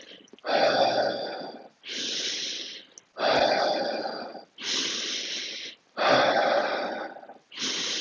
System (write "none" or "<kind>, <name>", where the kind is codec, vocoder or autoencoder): none